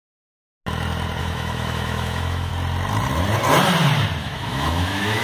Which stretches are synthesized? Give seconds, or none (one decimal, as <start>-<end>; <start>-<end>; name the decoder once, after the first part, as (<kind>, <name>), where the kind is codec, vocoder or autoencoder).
1.2-2.5 (autoencoder, DAC-VAE); 4.2-5.2